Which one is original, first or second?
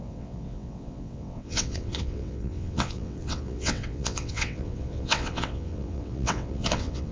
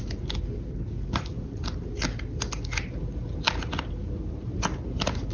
second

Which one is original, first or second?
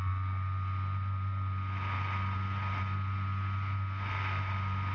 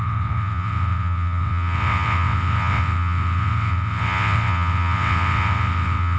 first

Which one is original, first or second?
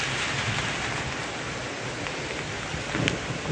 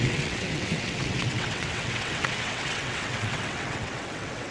first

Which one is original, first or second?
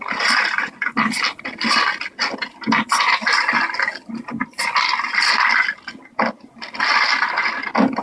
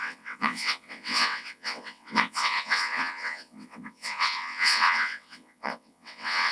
first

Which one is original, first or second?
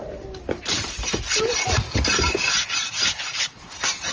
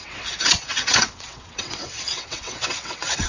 first